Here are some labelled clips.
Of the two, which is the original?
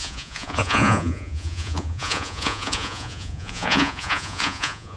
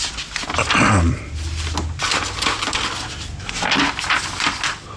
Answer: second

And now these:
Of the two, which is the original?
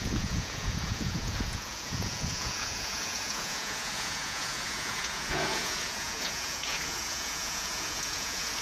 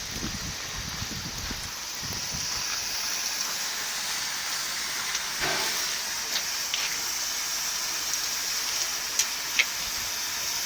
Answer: second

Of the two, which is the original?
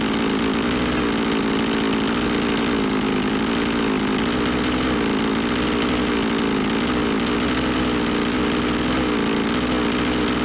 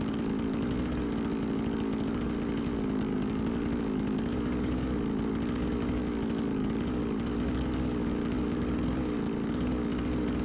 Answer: first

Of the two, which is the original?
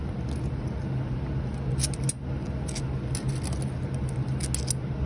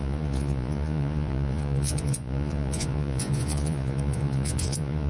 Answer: first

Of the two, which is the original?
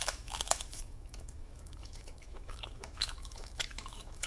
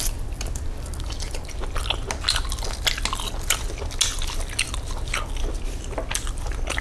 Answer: second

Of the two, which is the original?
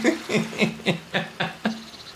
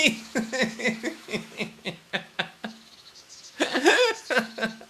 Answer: first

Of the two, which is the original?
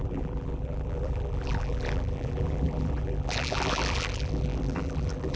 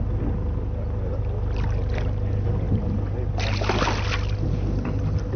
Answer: second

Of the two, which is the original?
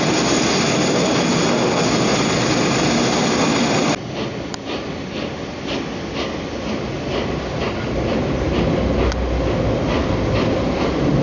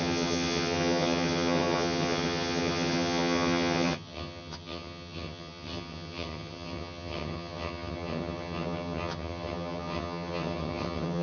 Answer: first